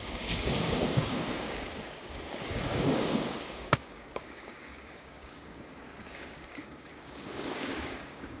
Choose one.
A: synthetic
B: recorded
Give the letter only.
A